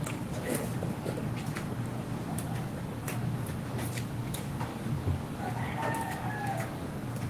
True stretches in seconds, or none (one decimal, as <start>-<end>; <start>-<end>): none